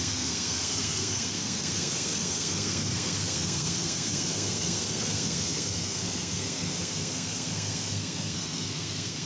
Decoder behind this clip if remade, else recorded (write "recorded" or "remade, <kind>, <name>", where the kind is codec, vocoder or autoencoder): remade, codec, SNAC